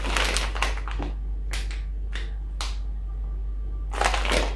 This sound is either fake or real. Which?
real